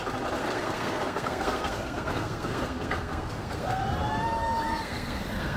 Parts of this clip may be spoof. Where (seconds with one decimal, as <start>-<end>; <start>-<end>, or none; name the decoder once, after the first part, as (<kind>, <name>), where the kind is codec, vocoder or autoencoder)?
0.4-3.8 (codec, SNAC); 4.7-5.6